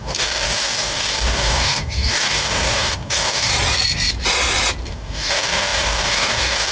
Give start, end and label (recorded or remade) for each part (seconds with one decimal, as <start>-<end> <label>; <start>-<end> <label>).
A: 0.0-3.5 remade; 3.5-4.9 recorded; 4.9-6.7 remade